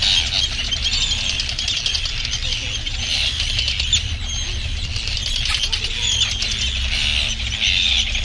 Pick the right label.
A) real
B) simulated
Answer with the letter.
A